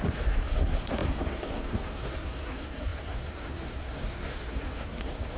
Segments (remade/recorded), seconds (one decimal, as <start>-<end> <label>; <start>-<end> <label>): 0.0-5.4 remade